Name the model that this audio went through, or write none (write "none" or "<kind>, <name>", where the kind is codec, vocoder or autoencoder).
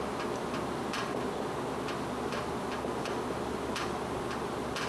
none